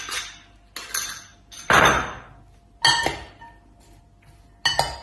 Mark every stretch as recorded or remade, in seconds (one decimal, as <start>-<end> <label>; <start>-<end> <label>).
0.0-5.0 recorded